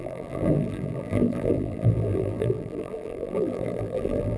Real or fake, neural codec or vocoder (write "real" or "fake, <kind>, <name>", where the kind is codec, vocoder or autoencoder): fake, vocoder, BigVGAN v2